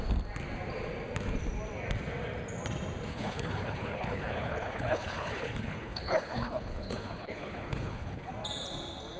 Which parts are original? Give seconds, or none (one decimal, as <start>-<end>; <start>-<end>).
0.0-3.1; 8.3-9.2